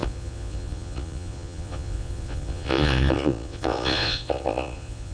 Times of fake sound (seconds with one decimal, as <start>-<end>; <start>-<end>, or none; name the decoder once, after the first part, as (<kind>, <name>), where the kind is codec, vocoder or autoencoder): 0.0-5.1 (vocoder, Vocos)